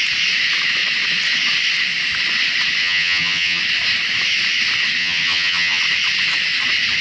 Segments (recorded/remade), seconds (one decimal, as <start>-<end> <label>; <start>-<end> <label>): 0.0-2.8 recorded; 2.8-3.6 remade; 3.6-5.0 recorded; 5.0-5.8 remade; 5.8-7.0 recorded